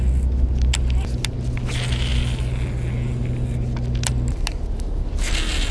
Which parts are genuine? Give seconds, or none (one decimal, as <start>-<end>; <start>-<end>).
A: 0.0-5.7